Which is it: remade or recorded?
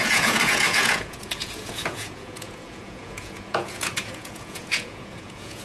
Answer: remade